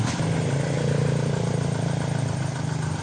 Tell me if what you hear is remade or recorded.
recorded